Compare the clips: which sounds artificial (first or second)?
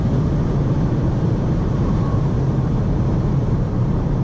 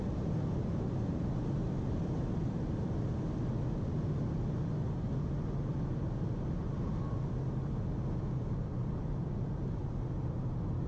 first